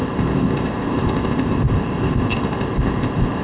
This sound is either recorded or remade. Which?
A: remade